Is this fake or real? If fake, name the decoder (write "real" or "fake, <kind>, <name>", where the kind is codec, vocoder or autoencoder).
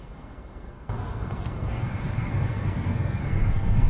fake, codec, SNAC